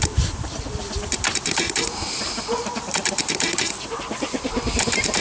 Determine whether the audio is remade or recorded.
remade